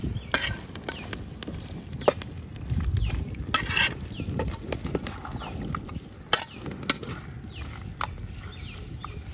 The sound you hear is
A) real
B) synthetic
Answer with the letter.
A